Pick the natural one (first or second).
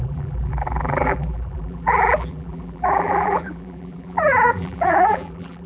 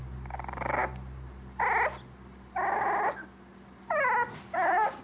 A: second